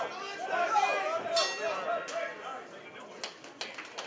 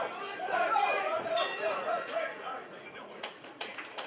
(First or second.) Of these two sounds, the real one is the first